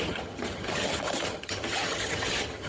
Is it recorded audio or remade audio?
remade